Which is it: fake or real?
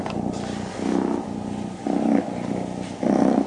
real